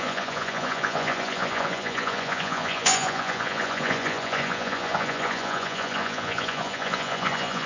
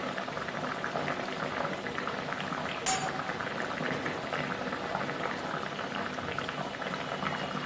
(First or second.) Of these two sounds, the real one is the second